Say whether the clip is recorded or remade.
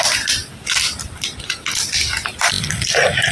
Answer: recorded